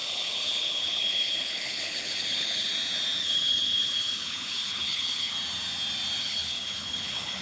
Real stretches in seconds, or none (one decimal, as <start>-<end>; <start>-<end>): 2.7-3.2; 5.3-6.2